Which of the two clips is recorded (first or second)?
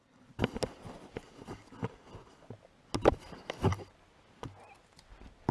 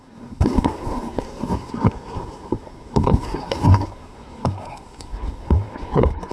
first